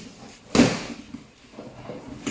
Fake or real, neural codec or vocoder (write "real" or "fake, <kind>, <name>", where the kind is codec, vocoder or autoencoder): real